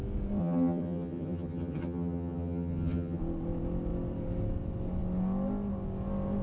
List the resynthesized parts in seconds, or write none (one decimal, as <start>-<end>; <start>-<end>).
0.4-3.2